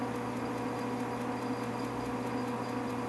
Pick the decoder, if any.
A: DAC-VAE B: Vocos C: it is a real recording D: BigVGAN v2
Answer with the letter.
C